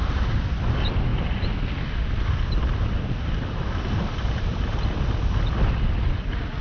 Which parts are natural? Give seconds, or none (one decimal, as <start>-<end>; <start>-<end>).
0.0-6.6